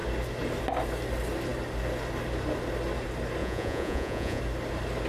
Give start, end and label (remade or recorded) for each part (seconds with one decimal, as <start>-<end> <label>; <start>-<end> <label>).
0.0-3.4 recorded; 3.4-4.4 remade; 4.4-5.1 recorded